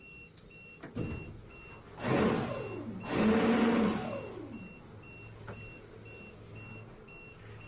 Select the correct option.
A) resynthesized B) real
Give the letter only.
B